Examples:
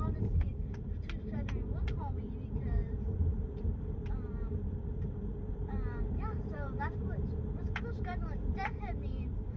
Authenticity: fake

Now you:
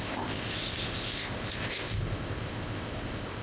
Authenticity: fake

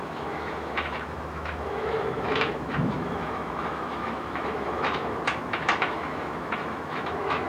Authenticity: fake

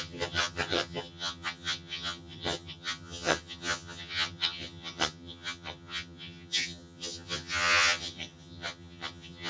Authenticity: fake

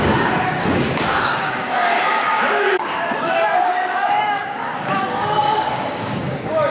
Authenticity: fake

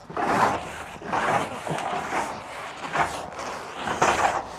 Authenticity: real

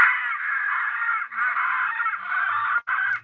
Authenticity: real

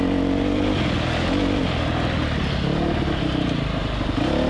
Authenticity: real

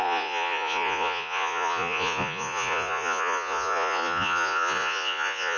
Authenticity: fake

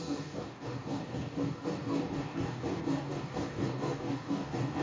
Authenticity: fake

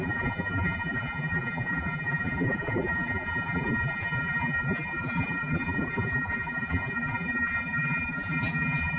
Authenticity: fake